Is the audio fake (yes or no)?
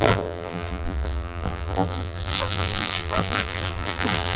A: yes